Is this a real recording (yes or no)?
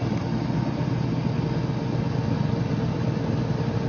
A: no